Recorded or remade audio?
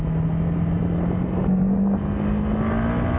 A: recorded